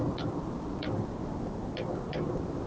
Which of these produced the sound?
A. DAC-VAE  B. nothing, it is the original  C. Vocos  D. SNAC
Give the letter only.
B